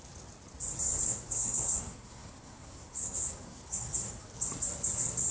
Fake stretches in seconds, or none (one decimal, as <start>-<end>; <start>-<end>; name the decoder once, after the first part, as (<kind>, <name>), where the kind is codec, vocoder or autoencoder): 1.1-4.3 (codec, SNAC)